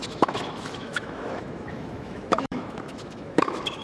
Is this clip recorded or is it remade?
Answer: remade